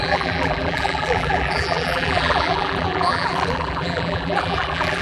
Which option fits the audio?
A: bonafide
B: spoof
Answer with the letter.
B